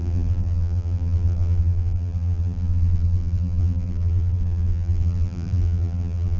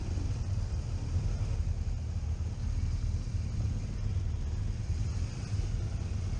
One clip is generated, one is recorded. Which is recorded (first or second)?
second